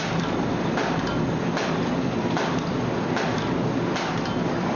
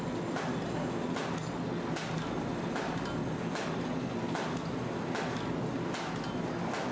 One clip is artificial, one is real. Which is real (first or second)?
second